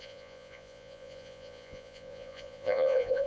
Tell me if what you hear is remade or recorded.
remade